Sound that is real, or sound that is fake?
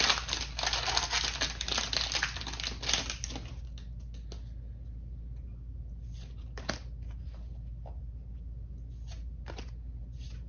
real